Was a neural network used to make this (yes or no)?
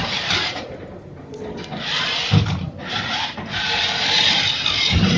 no